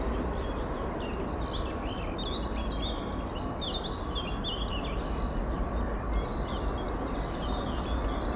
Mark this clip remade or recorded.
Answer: recorded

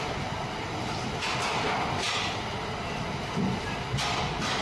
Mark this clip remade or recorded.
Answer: recorded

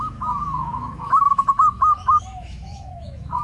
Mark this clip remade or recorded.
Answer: remade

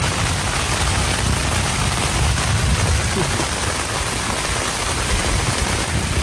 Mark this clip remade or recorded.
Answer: recorded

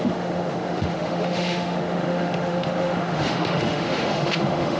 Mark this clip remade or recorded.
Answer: remade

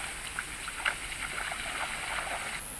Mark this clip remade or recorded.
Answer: recorded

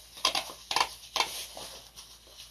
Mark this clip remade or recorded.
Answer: recorded